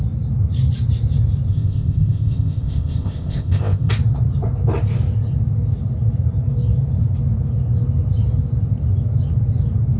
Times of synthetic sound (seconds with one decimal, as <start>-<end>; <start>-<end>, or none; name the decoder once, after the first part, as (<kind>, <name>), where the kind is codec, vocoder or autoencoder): 1.5-3.9 (codec, ZipCodec)